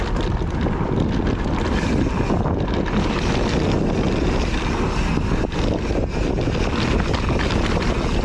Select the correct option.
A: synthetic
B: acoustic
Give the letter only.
B